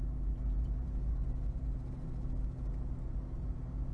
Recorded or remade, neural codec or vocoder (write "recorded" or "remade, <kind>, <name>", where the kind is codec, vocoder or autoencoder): recorded